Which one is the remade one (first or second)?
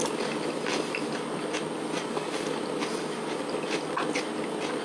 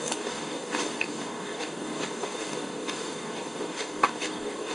second